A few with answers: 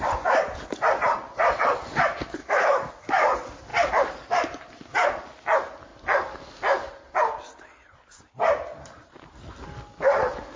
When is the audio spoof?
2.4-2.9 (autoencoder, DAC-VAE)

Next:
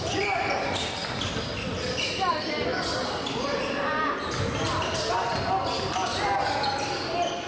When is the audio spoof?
none

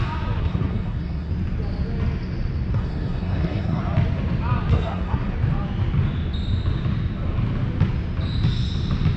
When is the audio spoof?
0.4-1.3 (codec, SNAC); 2.7-3.8; 4.7-5.3

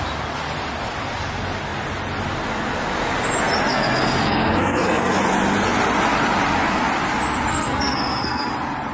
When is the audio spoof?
3.7-5.2 (codec, SNAC); 7.5-8.5

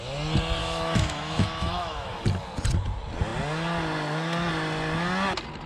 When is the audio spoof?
0.6-2.2 (autoencoder, DAC-VAE)